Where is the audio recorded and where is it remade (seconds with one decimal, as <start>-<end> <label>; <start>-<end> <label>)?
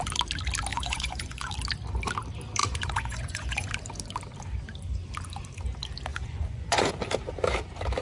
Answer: 0.0-0.7 recorded; 0.7-1.5 remade; 1.5-2.6 recorded; 2.6-3.7 remade; 3.7-6.1 recorded; 6.1-6.9 remade; 6.9-8.0 recorded